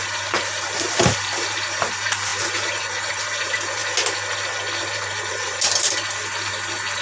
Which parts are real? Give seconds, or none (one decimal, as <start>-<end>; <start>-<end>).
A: 3.8-4.8